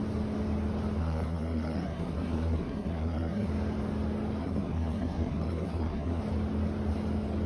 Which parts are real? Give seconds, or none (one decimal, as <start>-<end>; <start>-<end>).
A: 0.0-1.0; 3.5-4.4; 6.2-7.5

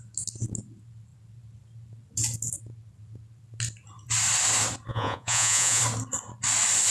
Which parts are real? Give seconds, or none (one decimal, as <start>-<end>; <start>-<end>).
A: 0.0-4.9; 5.8-6.9

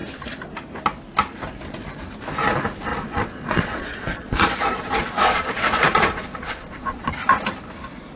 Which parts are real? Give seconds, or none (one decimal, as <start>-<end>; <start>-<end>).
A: 0.0-2.9; 7.1-8.2

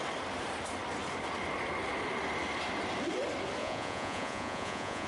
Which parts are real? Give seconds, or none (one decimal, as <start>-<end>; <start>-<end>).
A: 0.0-3.6

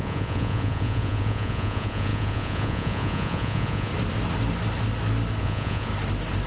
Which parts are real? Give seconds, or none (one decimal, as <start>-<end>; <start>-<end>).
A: 3.9-5.4; 5.9-6.5

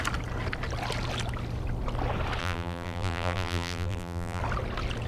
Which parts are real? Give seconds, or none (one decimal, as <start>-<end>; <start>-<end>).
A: 0.0-2.4; 4.4-5.1

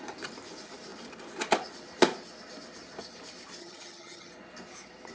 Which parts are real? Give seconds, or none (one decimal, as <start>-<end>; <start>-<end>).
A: 0.0-3.6; 4.3-5.1

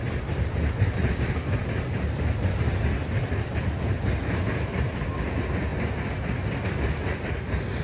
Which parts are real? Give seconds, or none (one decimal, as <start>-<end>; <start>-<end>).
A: 0.0-7.8